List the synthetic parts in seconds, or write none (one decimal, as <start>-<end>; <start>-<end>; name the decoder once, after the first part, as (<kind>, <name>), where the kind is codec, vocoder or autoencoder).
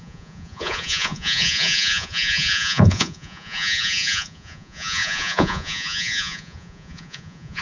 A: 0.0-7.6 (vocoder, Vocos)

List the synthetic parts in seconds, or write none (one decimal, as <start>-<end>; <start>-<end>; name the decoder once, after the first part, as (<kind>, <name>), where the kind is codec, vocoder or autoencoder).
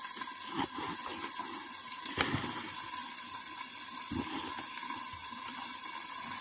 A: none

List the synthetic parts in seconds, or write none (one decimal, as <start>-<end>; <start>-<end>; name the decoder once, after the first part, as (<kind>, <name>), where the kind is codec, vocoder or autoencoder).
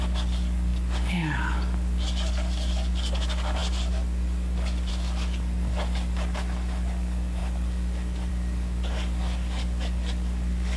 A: 0.0-10.8 (codec, DAC)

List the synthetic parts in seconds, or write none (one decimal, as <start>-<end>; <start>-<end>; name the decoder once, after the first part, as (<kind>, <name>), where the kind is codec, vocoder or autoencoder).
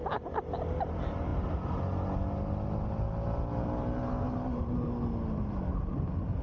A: none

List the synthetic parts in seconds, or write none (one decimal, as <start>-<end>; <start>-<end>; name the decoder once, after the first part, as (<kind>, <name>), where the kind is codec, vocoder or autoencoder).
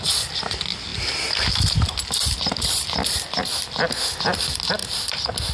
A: none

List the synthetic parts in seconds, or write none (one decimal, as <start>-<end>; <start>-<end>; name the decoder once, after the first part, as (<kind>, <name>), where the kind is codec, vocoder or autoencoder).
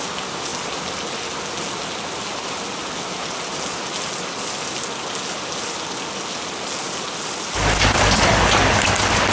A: none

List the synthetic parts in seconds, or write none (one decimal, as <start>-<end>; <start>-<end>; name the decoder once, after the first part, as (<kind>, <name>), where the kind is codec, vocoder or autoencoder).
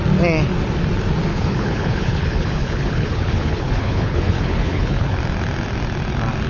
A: 1.3-5.2 (codec, HILCodec)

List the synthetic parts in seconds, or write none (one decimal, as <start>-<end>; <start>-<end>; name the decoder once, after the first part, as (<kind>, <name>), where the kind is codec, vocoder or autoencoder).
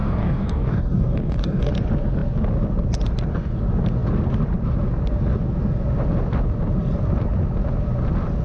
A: 0.0-1.7 (codec, DAC)